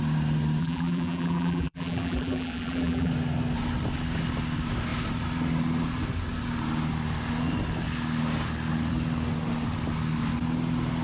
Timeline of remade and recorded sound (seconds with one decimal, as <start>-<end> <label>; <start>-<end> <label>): 0.0-0.6 recorded; 0.6-3.1 remade; 3.1-11.0 recorded